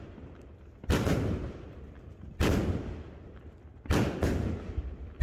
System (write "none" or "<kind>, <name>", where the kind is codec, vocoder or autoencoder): none